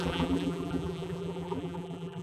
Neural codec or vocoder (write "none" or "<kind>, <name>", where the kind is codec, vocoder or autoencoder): vocoder, BigVGAN v2